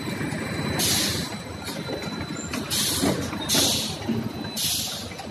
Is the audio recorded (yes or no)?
yes